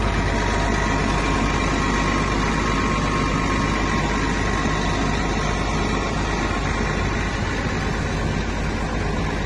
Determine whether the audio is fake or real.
real